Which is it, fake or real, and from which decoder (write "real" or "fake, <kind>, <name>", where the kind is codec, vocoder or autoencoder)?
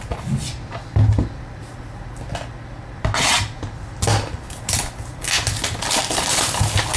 real